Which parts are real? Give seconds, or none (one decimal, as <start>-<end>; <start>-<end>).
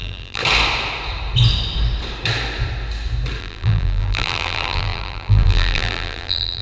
0.4-3.4